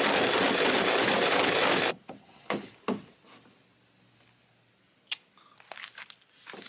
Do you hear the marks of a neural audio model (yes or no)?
no